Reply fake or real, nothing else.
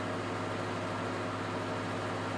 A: real